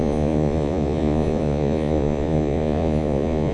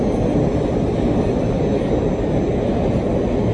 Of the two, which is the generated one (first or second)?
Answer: first